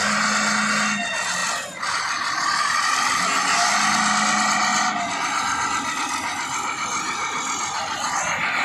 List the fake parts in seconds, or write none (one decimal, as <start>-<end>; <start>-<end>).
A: none